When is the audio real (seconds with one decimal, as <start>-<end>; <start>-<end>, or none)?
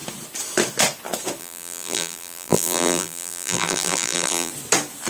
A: 0.0-1.4; 4.5-5.1